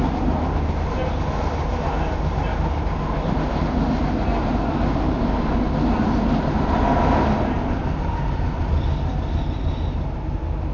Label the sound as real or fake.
real